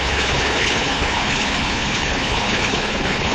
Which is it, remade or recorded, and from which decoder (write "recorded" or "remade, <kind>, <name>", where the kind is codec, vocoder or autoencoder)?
remade, codec, HILCodec